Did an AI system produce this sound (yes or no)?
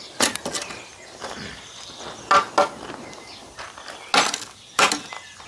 no